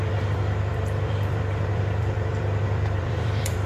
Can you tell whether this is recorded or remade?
remade